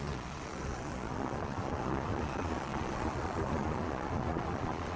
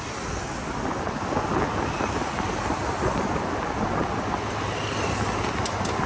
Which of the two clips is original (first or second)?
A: second